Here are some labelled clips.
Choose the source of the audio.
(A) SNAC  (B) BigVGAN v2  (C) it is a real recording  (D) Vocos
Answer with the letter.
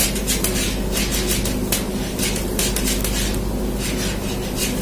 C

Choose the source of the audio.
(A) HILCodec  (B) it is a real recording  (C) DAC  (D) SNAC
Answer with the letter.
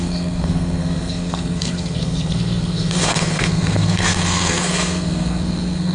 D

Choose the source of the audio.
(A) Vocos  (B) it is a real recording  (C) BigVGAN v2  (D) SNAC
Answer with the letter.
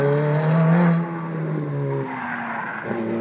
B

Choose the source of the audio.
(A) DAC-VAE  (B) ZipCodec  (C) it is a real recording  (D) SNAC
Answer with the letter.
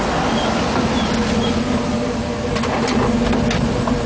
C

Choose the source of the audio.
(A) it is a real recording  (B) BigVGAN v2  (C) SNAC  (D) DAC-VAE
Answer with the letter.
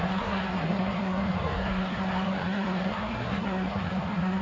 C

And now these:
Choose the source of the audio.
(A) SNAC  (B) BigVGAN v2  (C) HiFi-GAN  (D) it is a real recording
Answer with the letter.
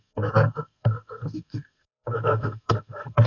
A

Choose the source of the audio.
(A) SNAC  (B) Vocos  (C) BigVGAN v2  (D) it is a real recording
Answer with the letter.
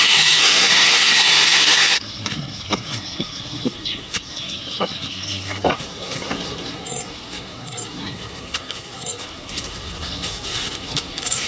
A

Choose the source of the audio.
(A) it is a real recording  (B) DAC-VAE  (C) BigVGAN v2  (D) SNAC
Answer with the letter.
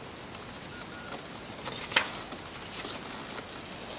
A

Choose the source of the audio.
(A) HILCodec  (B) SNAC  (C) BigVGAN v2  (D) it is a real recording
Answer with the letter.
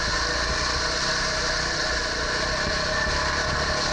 D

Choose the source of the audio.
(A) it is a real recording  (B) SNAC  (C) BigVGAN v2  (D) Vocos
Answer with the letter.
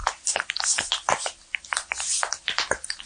A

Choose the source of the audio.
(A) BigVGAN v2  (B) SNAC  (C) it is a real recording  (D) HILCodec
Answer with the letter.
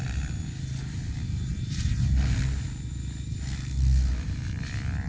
C